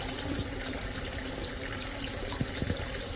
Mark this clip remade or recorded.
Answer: recorded